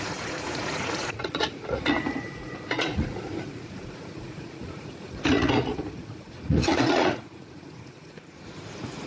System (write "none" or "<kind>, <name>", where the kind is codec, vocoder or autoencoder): vocoder, Vocos